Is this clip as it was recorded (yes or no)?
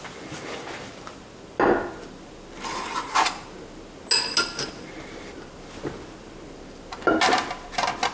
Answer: yes